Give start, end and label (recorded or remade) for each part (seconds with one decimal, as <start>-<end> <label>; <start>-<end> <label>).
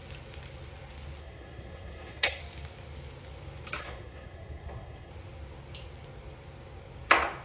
0.0-1.2 recorded; 1.2-2.4 remade; 2.4-3.8 recorded; 3.8-5.1 remade; 5.1-7.4 recorded